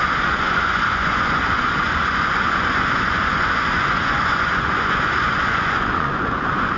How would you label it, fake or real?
fake